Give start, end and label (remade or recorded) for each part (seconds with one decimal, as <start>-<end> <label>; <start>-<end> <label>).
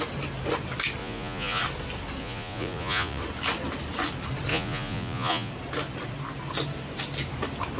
0.0-1.0 recorded; 1.0-1.6 remade; 1.6-2.2 recorded; 2.2-3.2 remade; 3.2-4.5 recorded; 4.5-5.5 remade; 5.5-7.8 recorded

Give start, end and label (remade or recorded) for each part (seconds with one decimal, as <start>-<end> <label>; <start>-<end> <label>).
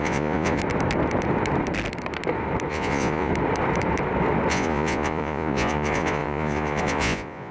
0.0-0.6 remade; 0.6-2.7 recorded; 2.7-3.3 remade; 3.3-4.5 recorded; 4.5-7.5 remade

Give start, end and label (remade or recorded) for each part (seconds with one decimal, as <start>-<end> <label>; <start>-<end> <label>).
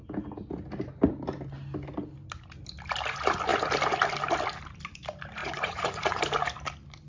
0.0-5.4 recorded; 5.4-6.2 remade; 6.2-7.1 recorded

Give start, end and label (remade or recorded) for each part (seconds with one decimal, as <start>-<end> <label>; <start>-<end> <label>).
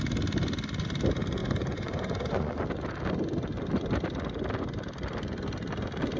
0.0-1.4 recorded; 1.4-2.6 remade; 2.6-6.2 recorded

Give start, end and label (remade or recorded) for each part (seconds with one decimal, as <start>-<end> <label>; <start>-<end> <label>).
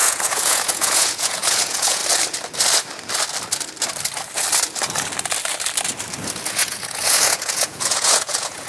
0.0-2.0 remade; 2.0-6.5 recorded; 6.5-8.7 remade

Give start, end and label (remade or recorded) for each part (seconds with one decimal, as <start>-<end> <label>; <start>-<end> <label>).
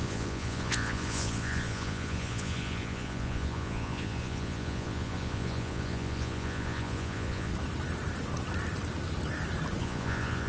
0.0-7.5 remade; 7.5-9.8 recorded; 9.8-10.5 remade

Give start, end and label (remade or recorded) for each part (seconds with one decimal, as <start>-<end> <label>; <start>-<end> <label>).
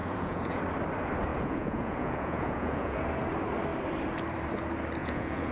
0.0-0.6 remade; 0.6-1.3 recorded; 1.3-3.0 remade; 3.0-5.0 recorded; 5.0-5.5 remade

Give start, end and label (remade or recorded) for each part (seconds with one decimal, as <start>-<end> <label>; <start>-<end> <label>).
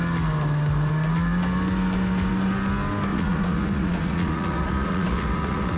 0.0-3.1 recorded; 3.1-5.8 remade